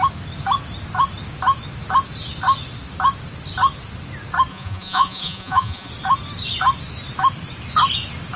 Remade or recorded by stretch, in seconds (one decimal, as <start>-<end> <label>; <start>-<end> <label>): 0.0-4.5 recorded; 4.5-5.9 remade; 5.9-8.4 recorded